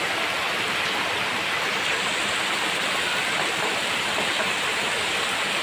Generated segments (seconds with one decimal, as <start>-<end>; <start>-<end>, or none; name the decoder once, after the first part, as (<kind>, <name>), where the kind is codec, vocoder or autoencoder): 1.3-4.7 (vocoder, BigVGAN v2)